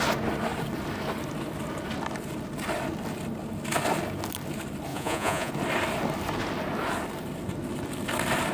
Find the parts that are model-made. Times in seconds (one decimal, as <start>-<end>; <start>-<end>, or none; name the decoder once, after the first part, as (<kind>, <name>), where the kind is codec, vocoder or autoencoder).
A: 4.9-5.5 (vocoder, Vocos)